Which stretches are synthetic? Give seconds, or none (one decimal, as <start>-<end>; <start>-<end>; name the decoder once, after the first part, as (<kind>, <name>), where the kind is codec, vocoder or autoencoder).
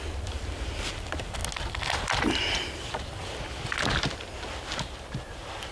none